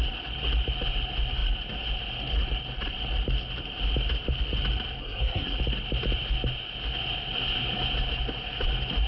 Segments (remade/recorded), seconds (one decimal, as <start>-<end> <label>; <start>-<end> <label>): 0.0-5.0 recorded; 5.0-5.6 remade; 5.6-9.1 recorded